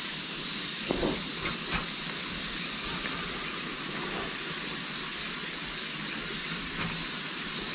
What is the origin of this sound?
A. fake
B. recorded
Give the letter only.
B